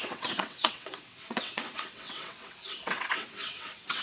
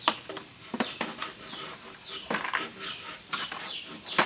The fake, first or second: first